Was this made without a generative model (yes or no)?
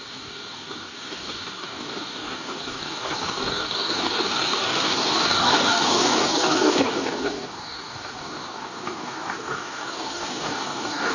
no